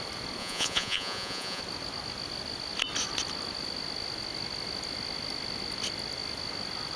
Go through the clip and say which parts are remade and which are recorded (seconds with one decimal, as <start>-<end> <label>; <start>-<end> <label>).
0.0-0.4 recorded; 0.4-1.6 remade; 1.6-7.0 recorded